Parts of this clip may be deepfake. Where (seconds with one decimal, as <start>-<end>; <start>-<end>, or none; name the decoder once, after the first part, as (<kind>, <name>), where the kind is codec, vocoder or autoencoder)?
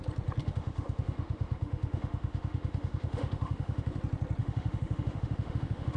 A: 0.4-4.0 (autoencoder, DAC-VAE); 4.4-6.0